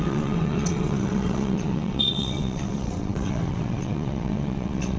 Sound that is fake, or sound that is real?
fake